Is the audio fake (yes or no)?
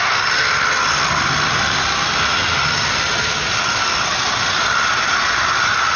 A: no